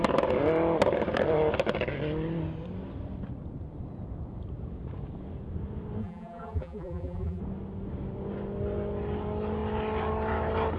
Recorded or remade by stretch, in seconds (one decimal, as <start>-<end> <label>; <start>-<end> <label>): 0.0-6.0 recorded; 6.0-7.4 remade; 7.4-10.8 recorded